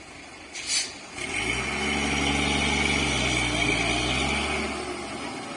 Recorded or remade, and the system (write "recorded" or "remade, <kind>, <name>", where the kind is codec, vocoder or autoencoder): recorded